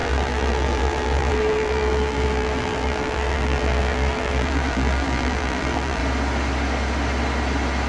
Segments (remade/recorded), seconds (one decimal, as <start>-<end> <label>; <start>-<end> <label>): 0.0-6.0 remade; 6.0-7.9 recorded